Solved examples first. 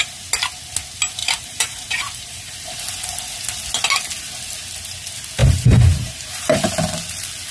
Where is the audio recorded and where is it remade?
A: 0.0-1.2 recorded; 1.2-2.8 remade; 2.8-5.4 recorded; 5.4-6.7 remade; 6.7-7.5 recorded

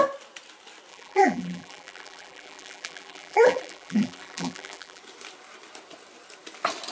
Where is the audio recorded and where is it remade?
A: 0.0-0.9 recorded; 0.9-5.0 remade; 5.0-6.9 recorded

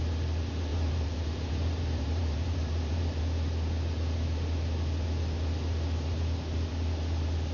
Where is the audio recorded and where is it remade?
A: 0.0-0.7 recorded; 0.7-3.2 remade; 3.2-7.5 recorded

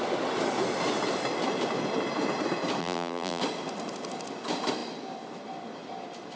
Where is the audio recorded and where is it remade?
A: 0.0-2.8 recorded; 2.8-3.4 remade; 3.4-6.4 recorded

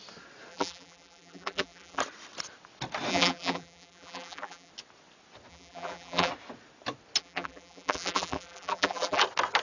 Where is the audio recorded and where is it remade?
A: 0.0-0.5 recorded; 0.5-2.0 remade; 2.0-3.1 recorded; 3.1-4.7 remade; 4.7-5.5 recorded; 5.5-6.3 remade; 6.3-7.2 recorded; 7.2-9.2 remade; 9.2-9.6 recorded